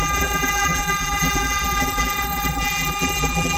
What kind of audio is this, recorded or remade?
remade